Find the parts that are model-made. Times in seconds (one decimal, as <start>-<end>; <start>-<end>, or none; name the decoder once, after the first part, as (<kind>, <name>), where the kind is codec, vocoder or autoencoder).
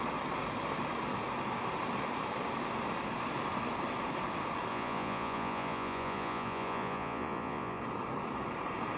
4.7-7.8 (vocoder, Vocos)